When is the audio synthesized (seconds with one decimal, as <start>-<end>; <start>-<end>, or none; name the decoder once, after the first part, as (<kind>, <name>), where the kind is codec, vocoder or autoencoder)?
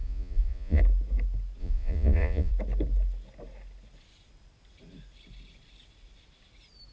0.0-0.8 (vocoder, Vocos); 1.6-2.5